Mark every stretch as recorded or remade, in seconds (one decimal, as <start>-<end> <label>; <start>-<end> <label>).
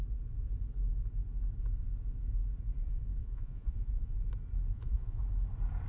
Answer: 0.0-3.2 recorded; 3.2-4.1 remade; 4.1-4.7 recorded; 4.7-5.2 remade; 5.2-5.9 recorded